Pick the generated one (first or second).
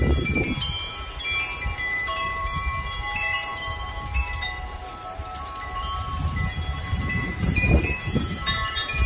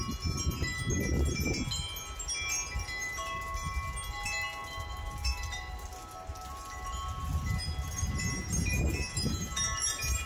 first